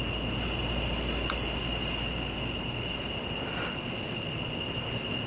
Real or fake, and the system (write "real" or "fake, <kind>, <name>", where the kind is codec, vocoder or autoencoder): real